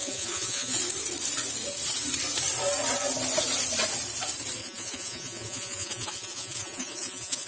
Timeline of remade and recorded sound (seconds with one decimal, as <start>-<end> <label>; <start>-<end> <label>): 0.0-0.8 remade; 0.8-4.6 recorded; 4.6-7.5 remade